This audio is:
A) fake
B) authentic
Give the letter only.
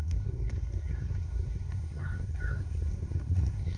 A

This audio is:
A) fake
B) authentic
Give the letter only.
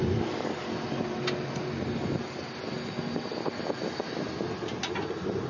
B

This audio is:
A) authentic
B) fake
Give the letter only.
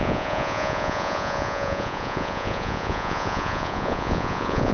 B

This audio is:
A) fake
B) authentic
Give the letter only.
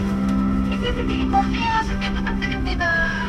A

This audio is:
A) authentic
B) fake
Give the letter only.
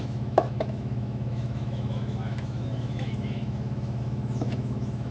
B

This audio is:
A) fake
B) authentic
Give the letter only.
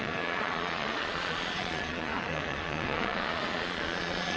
A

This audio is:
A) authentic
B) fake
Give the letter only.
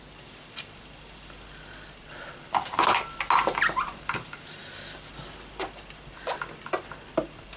A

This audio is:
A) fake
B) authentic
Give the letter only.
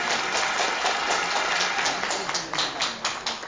B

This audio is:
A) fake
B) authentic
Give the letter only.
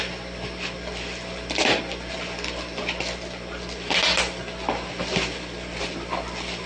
B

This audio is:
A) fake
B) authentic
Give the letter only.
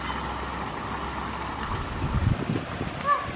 B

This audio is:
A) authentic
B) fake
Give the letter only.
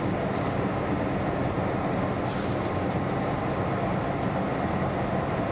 A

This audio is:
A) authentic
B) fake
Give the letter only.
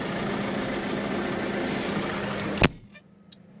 A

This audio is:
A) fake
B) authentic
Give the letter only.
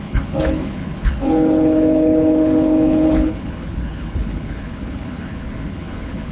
A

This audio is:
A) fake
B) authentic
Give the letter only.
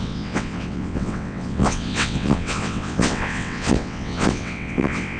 A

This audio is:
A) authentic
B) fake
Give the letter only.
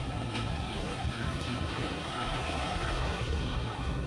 B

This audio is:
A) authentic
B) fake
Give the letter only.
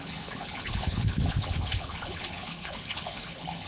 B